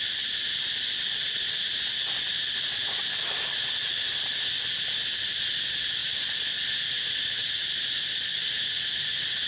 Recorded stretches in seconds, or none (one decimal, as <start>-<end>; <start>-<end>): 0.0-9.5